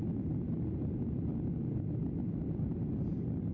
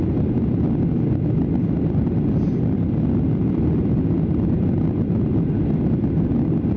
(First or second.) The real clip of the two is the first